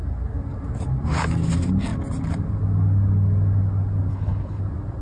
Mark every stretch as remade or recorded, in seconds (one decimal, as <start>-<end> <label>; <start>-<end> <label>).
0.0-4.1 recorded; 4.1-4.6 remade; 4.6-5.0 recorded